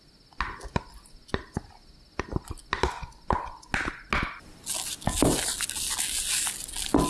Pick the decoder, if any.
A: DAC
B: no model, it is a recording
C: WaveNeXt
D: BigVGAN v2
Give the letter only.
B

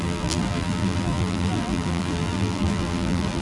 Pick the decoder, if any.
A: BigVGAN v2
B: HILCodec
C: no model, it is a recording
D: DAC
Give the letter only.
A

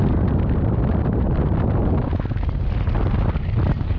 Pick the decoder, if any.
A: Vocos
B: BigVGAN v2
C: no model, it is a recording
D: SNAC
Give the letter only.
C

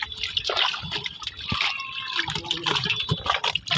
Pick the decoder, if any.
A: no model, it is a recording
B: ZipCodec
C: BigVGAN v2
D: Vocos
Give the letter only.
A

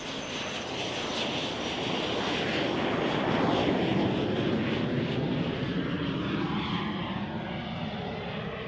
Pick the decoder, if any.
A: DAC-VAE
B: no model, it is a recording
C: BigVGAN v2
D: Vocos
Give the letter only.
B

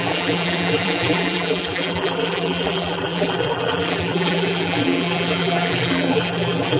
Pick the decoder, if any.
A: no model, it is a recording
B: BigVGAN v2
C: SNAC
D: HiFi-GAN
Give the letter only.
B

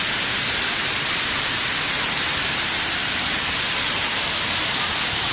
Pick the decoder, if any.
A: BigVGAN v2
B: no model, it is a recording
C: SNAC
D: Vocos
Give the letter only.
A